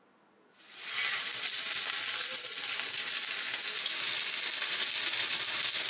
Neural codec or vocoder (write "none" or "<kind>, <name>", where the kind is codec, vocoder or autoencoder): none